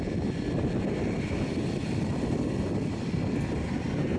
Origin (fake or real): real